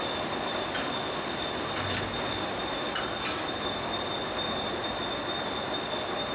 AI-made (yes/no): no